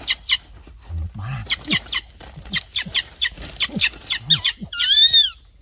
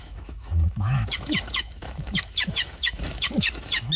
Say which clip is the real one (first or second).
first